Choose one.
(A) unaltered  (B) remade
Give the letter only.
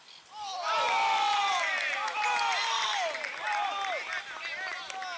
A